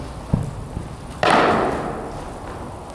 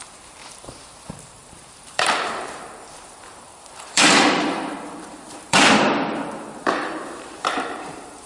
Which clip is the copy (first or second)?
second